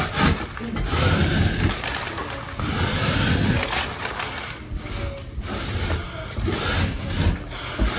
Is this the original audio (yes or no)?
yes